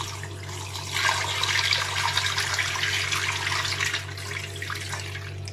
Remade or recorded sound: recorded